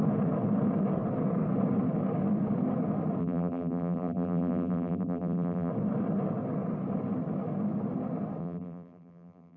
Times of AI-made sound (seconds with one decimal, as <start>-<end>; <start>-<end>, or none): 3.2-5.7; 8.4-9.6